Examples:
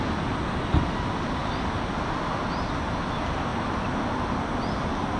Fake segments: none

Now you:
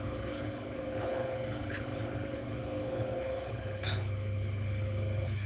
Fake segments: 0.0-5.5 (codec, HILCodec)